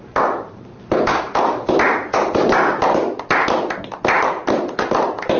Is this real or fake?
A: real